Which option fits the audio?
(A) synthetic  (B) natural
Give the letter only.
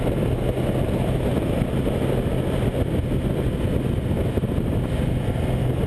B